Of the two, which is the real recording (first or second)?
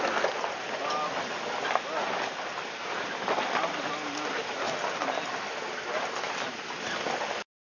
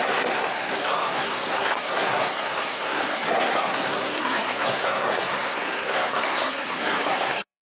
first